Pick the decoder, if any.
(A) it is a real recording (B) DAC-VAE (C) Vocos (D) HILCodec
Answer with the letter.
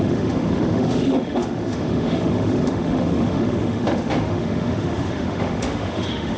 B